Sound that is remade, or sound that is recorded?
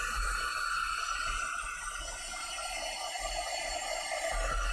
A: remade